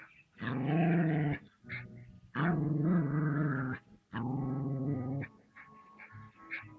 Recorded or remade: recorded